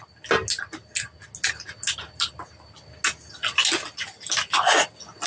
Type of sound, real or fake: real